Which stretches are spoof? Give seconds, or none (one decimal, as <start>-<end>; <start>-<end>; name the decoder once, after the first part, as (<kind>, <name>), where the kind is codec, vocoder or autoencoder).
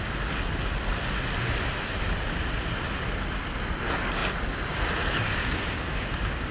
5.4-6.5 (codec, DAC)